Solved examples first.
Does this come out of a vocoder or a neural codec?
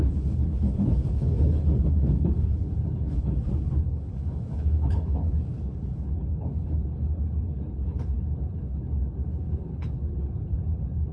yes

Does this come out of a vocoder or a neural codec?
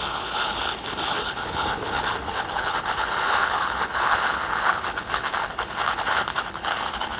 yes